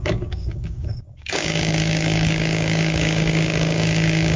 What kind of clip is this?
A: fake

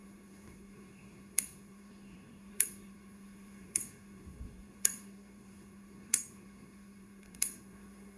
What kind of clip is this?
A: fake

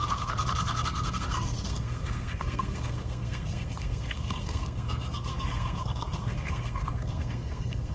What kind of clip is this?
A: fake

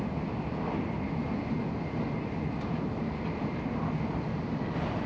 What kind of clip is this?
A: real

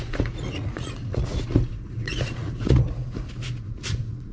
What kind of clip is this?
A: fake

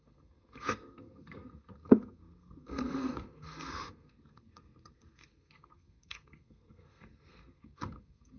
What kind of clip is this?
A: fake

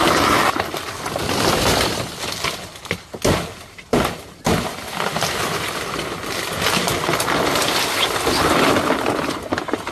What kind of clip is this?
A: real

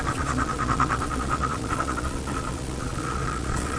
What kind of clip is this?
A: fake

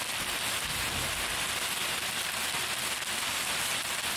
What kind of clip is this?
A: real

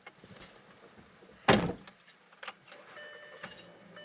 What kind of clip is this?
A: real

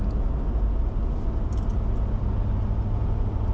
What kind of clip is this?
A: real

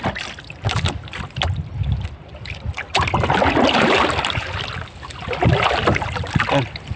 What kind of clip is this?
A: real